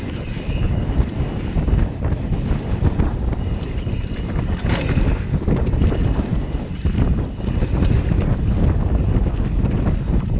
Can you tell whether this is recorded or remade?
recorded